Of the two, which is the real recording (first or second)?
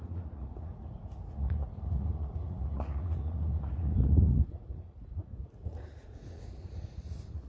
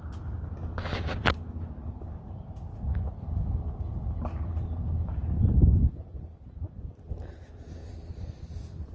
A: second